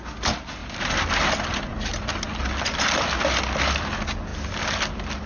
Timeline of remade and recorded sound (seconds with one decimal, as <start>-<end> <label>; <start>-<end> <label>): 0.0-5.3 recorded